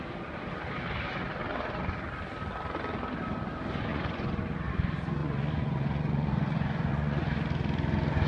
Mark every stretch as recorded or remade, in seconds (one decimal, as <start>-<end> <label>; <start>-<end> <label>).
0.0-3.9 recorded; 3.9-4.4 remade; 4.4-5.2 recorded; 5.2-7.2 remade; 7.2-8.3 recorded